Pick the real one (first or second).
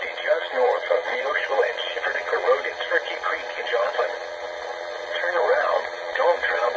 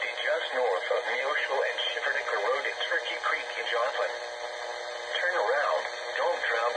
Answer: second